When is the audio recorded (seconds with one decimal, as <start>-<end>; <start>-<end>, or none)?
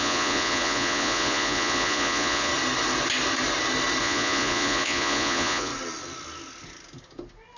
2.5-4.0; 5.7-7.6